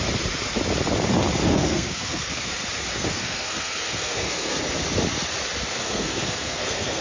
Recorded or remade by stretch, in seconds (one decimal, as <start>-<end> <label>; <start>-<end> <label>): 0.0-1.4 recorded; 1.4-2.5 remade; 2.5-2.9 recorded; 2.9-4.6 remade; 4.6-5.7 recorded; 5.7-7.0 remade